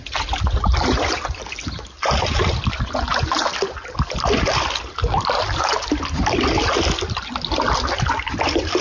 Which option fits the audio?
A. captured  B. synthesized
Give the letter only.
A